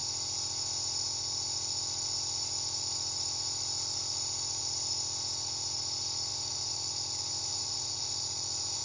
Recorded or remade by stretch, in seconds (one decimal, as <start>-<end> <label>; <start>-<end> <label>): 0.0-6.3 recorded; 6.3-8.8 remade